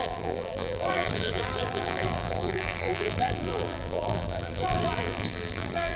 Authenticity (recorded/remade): remade